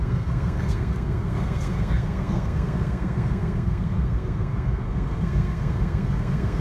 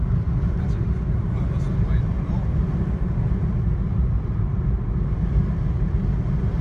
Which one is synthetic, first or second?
first